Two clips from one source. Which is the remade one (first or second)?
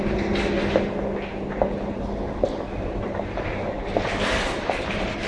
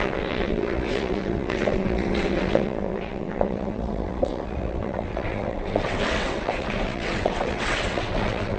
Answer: second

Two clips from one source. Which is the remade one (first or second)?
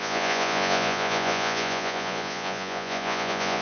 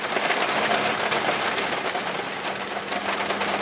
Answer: first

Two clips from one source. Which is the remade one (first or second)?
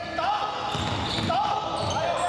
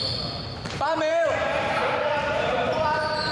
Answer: second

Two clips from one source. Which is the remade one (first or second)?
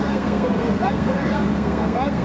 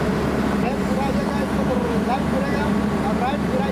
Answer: first